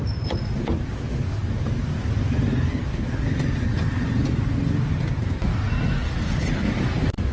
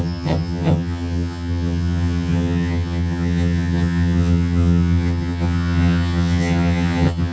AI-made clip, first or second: second